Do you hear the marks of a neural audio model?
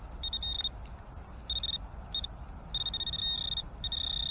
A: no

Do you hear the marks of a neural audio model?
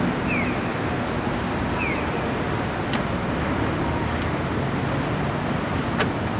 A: no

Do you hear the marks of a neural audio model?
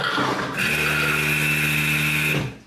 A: no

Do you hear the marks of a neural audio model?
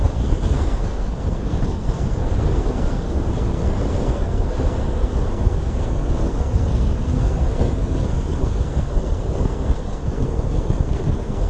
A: yes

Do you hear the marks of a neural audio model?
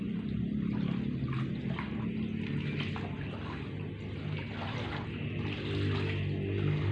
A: no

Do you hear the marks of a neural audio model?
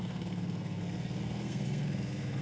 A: yes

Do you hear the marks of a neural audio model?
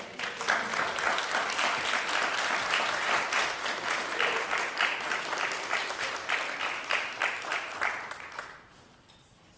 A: no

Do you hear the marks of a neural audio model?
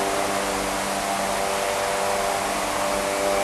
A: no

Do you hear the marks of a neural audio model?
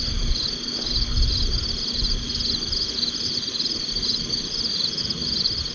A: no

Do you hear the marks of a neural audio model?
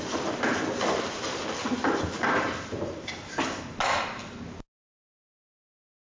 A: no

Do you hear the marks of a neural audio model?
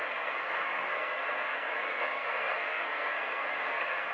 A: yes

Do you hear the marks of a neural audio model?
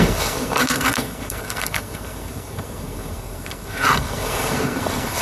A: yes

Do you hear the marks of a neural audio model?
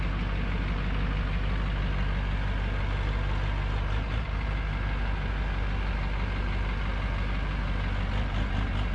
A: no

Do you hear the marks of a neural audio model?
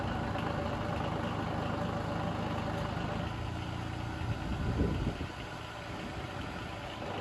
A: no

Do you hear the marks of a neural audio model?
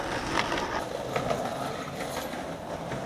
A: no